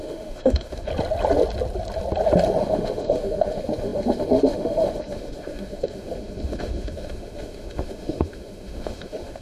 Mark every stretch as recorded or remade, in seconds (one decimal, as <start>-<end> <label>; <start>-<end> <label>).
0.0-0.9 remade; 0.9-2.6 recorded; 2.6-9.4 remade